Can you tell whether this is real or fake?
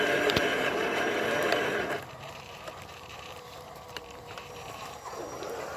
fake